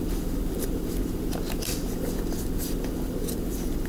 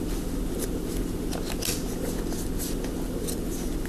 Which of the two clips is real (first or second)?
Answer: second